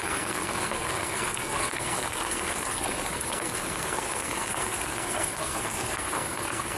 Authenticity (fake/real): fake